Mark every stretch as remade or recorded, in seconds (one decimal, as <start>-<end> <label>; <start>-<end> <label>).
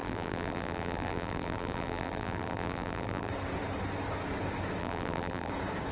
0.0-3.3 remade; 3.3-4.8 recorded; 4.8-5.5 remade; 5.5-5.9 recorded